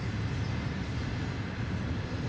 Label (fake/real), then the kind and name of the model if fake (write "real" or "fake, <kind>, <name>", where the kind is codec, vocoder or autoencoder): real